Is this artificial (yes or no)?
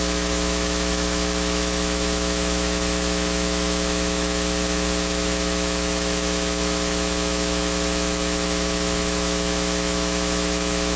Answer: yes